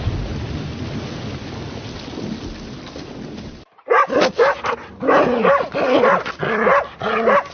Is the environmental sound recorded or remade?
recorded